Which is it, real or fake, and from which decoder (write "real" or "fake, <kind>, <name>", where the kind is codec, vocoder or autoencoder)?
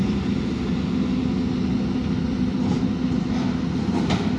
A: real